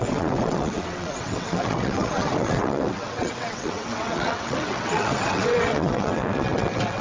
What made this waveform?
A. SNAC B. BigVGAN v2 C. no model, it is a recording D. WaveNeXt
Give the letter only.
D